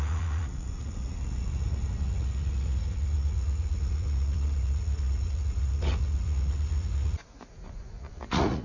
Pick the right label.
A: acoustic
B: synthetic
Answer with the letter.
B